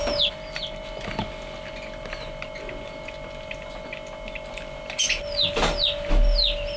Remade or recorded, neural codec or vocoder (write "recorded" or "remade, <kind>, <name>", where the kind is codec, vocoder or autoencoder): recorded